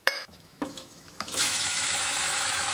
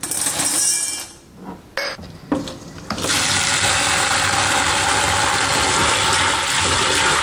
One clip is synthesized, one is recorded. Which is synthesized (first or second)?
first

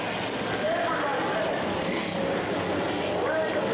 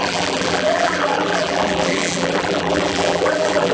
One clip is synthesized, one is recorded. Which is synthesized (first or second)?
second